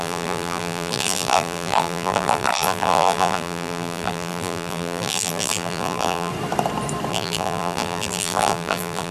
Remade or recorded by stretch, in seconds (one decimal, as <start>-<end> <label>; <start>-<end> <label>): 0.0-6.3 remade; 6.3-7.1 recorded; 7.1-9.1 remade